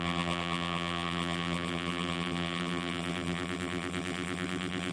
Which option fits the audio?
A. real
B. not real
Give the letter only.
B